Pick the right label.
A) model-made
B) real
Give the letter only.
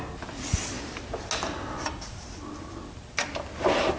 B